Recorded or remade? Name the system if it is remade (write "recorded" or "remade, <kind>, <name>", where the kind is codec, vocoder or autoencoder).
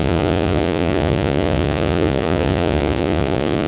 remade, vocoder, Vocos